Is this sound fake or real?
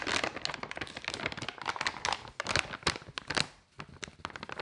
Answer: real